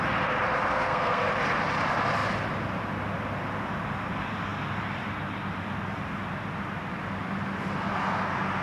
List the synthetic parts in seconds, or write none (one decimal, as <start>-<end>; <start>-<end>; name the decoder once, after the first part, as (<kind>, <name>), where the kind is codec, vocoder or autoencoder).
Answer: 0.7-1.3 (codec, SNAC)